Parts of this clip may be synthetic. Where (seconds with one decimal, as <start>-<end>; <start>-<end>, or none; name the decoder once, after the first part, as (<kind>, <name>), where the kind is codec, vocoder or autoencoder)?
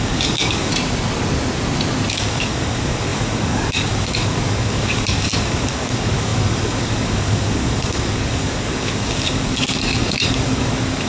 0.0-0.7 (codec, DAC); 2.1-11.1